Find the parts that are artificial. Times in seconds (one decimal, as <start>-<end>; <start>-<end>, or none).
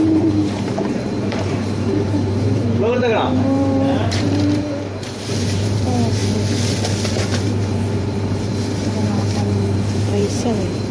0.0-6.2; 7.1-8.5; 9.1-10.9